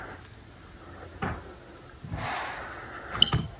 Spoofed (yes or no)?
no